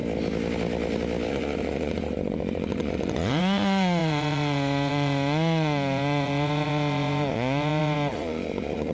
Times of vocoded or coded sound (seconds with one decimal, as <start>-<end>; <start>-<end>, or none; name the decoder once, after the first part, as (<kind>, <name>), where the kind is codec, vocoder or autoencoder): 1.3-8.9 (vocoder, Vocos)